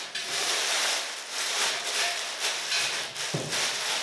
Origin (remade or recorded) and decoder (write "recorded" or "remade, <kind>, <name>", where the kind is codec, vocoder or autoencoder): remade, vocoder, BigVGAN v2